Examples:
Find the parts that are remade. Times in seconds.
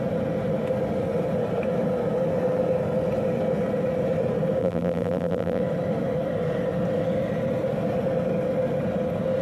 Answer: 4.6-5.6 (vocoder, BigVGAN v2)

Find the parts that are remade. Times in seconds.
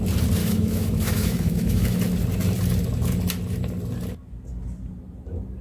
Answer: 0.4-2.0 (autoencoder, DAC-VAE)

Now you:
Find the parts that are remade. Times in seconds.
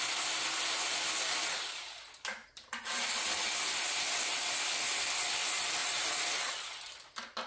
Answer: 2.4-4.5 (vocoder, BigVGAN v2); 5.8-6.5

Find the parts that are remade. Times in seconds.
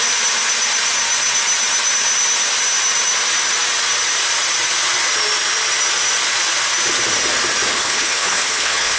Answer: 7.7-9.0 (codec, HILCodec)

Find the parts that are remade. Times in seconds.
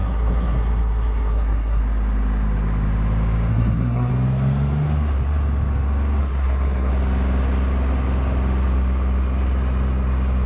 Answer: 0.0-1.8 (codec, SNAC); 3.5-4.1; 6.2-6.9